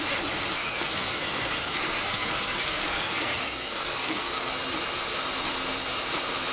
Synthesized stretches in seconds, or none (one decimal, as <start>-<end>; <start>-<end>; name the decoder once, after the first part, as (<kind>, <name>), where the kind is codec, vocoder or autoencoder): 0.6-4.5 (codec, SNAC)